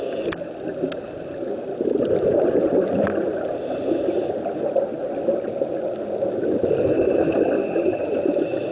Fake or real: real